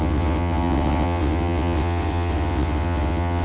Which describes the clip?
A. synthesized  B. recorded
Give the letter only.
A